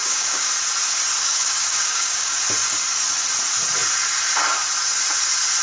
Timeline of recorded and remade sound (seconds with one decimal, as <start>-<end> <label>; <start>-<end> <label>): 0.0-0.5 remade; 0.5-1.2 recorded; 1.2-2.4 remade; 2.4-5.6 recorded